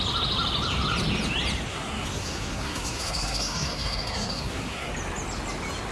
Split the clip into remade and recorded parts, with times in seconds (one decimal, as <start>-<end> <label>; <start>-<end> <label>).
0.0-1.7 recorded; 1.7-4.9 remade; 4.9-5.9 recorded

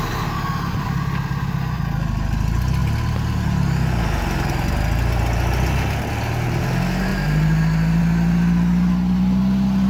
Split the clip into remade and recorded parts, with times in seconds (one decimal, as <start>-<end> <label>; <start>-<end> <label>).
0.0-9.9 recorded

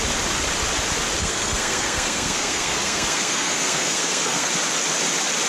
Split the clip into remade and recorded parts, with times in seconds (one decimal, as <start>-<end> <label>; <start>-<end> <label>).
0.0-1.2 recorded; 1.2-4.5 remade; 4.5-5.5 recorded

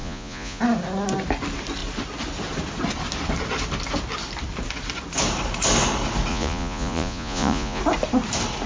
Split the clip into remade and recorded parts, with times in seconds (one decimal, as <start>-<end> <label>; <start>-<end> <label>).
0.0-0.6 remade; 0.6-6.3 recorded; 6.3-7.8 remade; 7.8-8.7 recorded

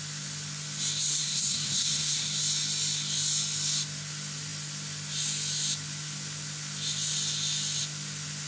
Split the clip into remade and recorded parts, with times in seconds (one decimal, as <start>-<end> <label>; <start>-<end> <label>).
0.0-1.1 recorded; 1.1-2.3 remade; 2.3-8.5 recorded

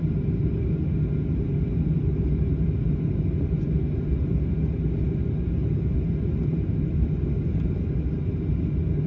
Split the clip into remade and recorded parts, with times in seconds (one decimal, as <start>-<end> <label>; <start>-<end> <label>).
0.0-9.1 recorded